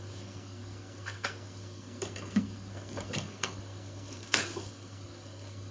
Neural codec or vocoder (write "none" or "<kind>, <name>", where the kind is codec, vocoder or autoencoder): codec, SNAC